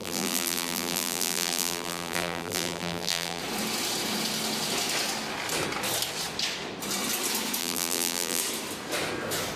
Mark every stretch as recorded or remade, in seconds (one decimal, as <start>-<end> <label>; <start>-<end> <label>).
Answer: 0.0-3.4 remade; 3.4-7.6 recorded; 7.6-8.4 remade; 8.4-9.6 recorded